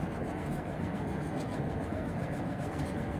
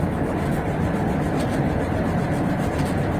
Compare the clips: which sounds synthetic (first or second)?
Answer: first